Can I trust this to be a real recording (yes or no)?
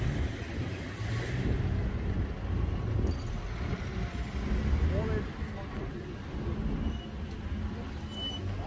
yes